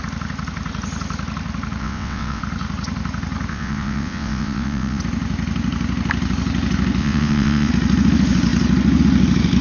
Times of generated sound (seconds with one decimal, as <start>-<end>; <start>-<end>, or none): 1.8-2.4; 3.5-5.0; 7.0-7.7